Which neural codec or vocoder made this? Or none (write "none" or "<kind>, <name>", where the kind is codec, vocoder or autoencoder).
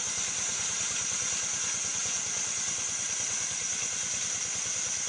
none